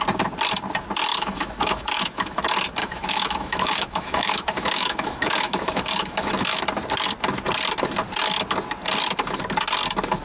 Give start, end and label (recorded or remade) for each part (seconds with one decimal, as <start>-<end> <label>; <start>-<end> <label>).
0.0-1.1 recorded; 1.1-2.4 remade; 2.4-2.8 recorded; 2.8-6.6 remade; 6.6-10.2 recorded